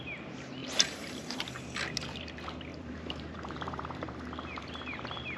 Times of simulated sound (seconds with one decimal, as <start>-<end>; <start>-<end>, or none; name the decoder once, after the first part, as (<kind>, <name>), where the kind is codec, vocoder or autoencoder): 0.6-1.4 (vocoder, BigVGAN v2); 2.7-5.4